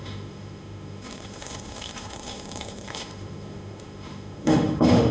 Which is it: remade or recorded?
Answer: remade